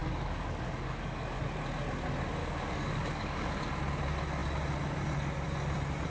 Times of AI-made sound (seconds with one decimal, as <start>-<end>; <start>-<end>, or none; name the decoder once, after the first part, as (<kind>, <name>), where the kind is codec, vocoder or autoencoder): 0.0-1.4 (codec, DAC); 2.4-3.6